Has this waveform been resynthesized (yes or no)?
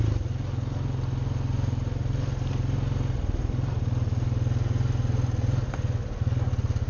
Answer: no